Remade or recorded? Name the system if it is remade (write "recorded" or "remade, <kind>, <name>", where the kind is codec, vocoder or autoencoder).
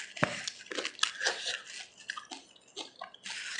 recorded